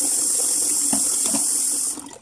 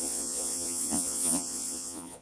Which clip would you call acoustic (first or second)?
first